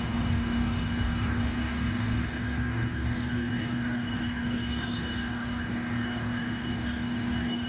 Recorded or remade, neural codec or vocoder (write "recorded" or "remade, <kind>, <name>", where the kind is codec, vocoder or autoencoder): remade, codec, DAC